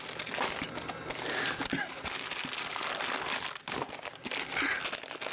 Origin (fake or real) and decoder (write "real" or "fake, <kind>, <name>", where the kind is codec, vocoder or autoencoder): real